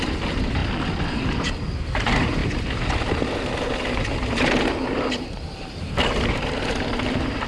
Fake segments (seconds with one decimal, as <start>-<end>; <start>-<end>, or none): 0.0-0.6; 1.4-7.5